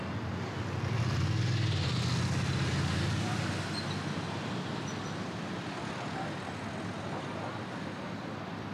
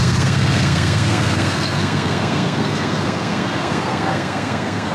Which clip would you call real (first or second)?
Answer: first